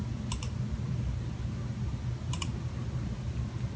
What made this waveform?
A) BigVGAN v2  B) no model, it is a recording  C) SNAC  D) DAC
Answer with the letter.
B